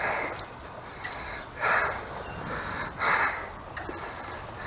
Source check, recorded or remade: recorded